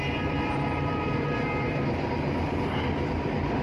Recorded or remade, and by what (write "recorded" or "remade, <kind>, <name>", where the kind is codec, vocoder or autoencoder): remade, vocoder, BigVGAN v2